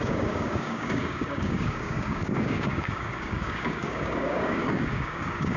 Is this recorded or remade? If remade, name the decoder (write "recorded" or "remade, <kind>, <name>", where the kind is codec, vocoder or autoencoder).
remade, codec, DAC